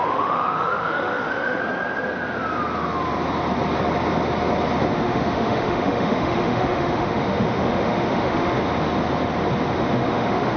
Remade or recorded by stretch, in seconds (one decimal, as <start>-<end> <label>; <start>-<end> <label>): 0.0-1.6 remade; 1.6-4.9 recorded; 4.9-8.6 remade; 8.6-9.7 recorded; 9.7-10.6 remade